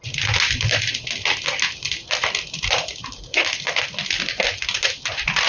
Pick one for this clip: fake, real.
real